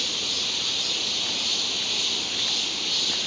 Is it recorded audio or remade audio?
recorded